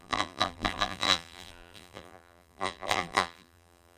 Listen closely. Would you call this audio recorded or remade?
remade